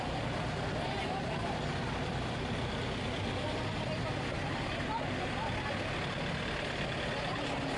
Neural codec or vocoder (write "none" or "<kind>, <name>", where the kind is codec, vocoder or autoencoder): none